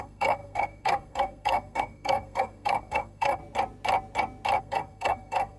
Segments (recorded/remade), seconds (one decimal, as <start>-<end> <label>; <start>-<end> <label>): 0.0-3.4 remade; 3.4-4.6 recorded; 4.6-5.6 remade